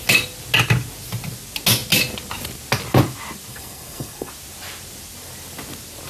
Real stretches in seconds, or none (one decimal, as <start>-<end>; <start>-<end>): 0.0-3.5; 4.3-6.1